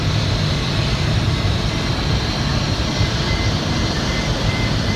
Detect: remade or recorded remade